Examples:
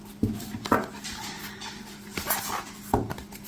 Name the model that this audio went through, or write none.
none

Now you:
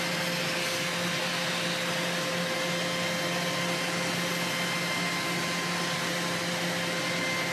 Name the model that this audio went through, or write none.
none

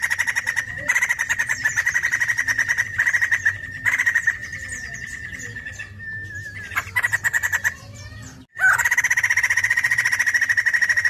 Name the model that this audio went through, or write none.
none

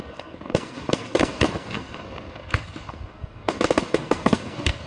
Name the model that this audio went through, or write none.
codec, SNAC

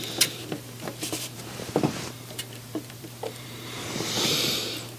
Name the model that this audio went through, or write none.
vocoder, BigVGAN v2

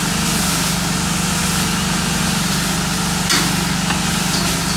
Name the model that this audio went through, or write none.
none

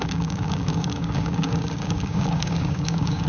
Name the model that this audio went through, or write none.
codec, DAC